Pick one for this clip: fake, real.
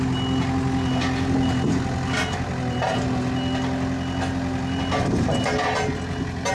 real